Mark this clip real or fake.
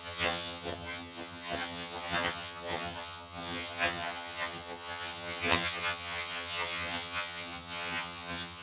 fake